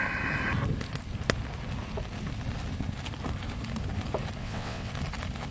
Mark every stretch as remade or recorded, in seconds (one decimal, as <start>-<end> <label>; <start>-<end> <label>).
0.0-4.4 recorded; 4.4-4.9 remade; 4.9-5.5 recorded